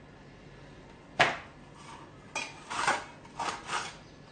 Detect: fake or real real